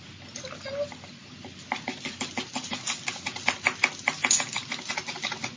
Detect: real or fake real